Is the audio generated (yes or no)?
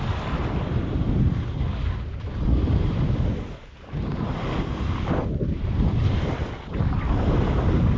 no